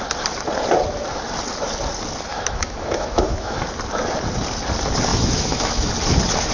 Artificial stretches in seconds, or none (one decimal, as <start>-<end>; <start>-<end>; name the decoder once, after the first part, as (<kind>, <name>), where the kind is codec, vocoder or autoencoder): 2.3-3.6 (autoencoder, DAC-VAE); 5.1-5.9